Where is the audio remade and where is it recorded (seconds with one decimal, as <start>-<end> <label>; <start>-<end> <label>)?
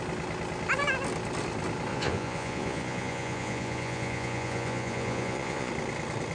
0.0-1.9 recorded; 1.9-5.7 remade; 5.7-6.3 recorded